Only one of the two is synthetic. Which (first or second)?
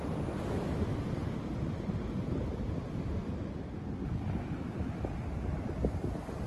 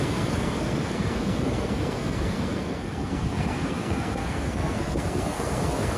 second